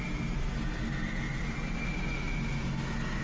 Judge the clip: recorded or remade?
recorded